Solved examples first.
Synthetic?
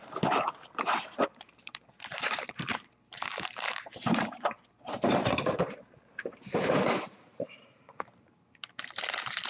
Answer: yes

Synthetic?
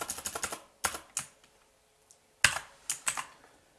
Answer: no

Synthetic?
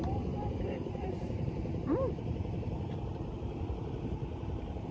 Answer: yes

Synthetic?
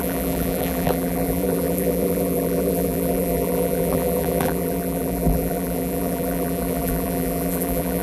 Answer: yes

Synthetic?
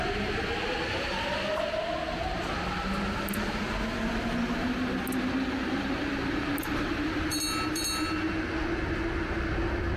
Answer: no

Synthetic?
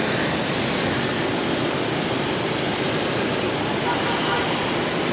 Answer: yes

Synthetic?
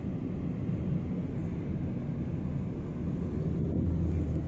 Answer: no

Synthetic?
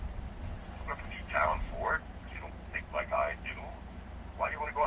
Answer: yes